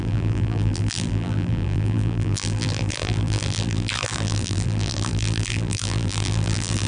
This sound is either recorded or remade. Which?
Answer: remade